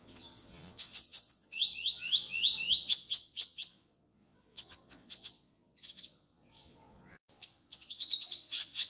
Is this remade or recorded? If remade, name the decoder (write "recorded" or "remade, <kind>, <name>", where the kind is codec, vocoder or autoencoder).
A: remade, vocoder, Vocos